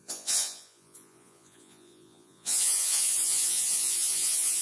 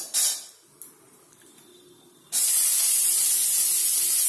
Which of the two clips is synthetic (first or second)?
first